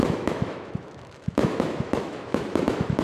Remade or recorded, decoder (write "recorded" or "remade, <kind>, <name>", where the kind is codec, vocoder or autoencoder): remade, autoencoder, DAC-VAE